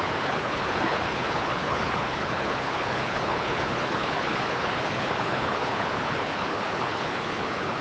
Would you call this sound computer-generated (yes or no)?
yes